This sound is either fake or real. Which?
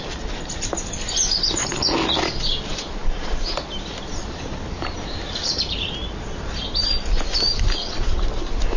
real